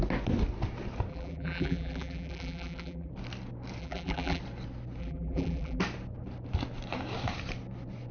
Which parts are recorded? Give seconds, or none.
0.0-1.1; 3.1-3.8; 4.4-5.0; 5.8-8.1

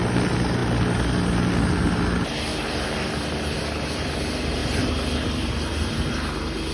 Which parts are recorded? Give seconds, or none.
0.0-2.5; 3.6-4.6; 5.7-6.7

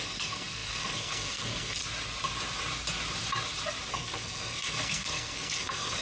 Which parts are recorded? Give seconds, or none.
1.8-3.9

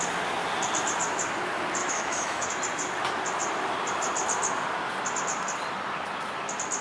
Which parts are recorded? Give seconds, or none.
0.0-1.8; 2.5-6.8

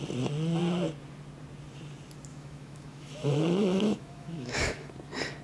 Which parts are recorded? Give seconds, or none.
0.0-2.3; 4.9-5.4

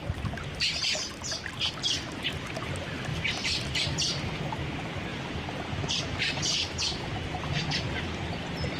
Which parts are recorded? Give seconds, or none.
0.0-3.1; 4.4-5.1; 8.2-8.8